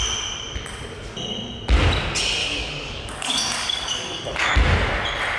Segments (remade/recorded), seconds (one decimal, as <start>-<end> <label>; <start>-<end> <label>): 0.0-2.4 recorded; 2.4-4.5 remade; 4.5-5.4 recorded